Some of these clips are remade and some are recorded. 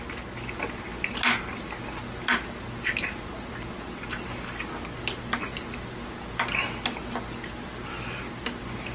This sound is recorded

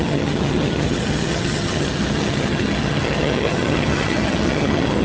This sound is remade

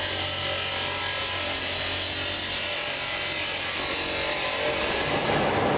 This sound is remade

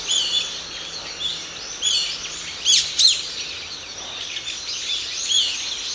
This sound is recorded